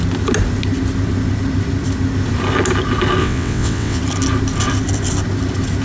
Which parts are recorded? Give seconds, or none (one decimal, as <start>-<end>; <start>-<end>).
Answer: 0.0-3.2; 4.0-5.8

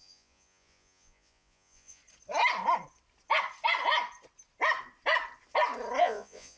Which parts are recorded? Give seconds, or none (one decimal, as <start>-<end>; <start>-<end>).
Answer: 2.0-6.0

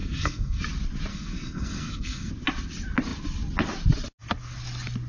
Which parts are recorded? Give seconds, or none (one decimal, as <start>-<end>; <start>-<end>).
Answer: 0.6-1.1; 2.3-5.1

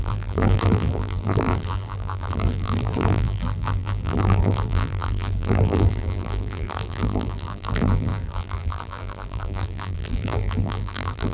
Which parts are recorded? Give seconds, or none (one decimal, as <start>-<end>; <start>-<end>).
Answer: none

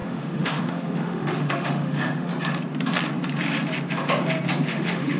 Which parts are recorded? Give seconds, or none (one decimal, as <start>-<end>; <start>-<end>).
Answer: 2.3-4.7